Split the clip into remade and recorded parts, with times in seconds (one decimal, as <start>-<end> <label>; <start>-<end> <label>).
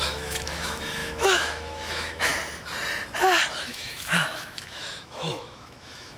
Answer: 0.0-2.3 remade; 2.3-3.6 recorded; 3.6-6.2 remade